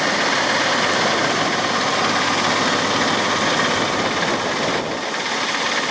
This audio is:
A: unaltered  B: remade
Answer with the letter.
A